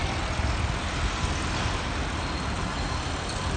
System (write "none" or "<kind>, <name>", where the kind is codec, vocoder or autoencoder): none